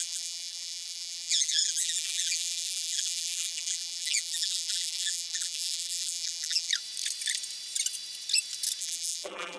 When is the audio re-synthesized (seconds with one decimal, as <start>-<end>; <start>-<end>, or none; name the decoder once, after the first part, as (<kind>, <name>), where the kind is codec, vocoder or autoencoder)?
0.0-6.7 (vocoder, BigVGAN v2); 8.8-9.6